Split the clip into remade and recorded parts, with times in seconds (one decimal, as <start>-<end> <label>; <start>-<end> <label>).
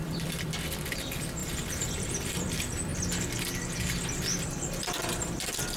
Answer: 0.0-2.9 remade; 2.9-4.5 recorded; 4.5-5.8 remade